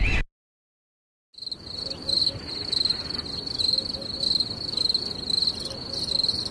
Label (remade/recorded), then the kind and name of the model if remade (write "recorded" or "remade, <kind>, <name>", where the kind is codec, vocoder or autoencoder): recorded